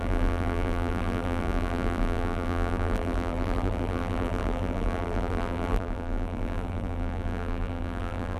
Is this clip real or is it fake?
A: fake